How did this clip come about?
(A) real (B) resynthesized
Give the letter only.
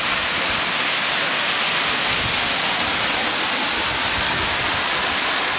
A